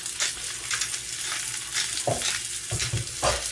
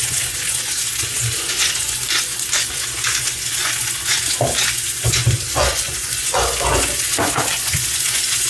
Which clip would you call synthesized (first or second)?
second